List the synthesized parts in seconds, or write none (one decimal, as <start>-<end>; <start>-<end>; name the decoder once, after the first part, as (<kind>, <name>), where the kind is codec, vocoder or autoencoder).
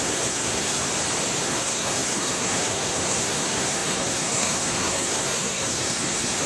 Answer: 0.0-0.8 (codec, SNAC); 1.4-6.5